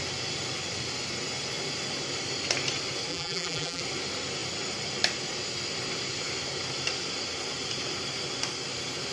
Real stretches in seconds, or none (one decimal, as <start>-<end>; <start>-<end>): 0.0-3.1; 3.8-9.1